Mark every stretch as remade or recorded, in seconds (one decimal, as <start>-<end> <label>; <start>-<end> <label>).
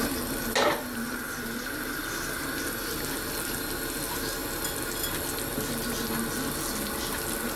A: 0.0-7.6 recorded